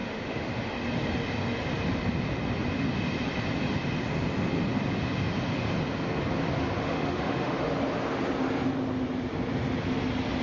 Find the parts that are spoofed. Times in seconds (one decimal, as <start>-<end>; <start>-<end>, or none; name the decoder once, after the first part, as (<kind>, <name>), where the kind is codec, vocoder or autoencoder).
0.0-0.7 (autoencoder, DAC-VAE); 6.8-7.7